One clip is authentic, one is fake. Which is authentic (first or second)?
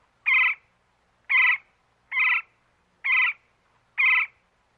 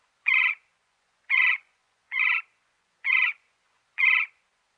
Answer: first